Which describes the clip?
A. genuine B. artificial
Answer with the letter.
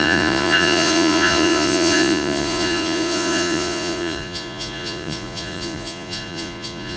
B